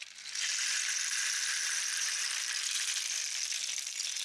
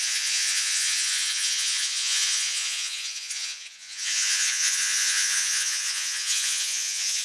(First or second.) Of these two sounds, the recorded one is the first